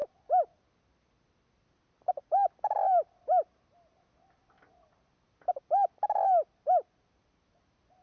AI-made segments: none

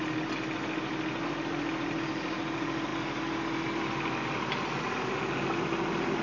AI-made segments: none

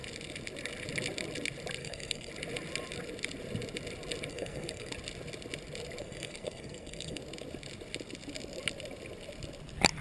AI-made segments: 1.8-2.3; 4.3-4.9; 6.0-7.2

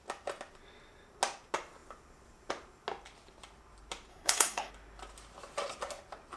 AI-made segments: 4.1-4.7

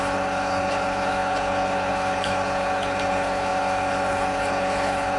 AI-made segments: 0.0-5.2